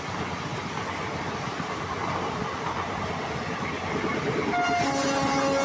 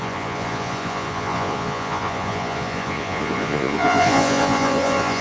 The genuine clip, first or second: first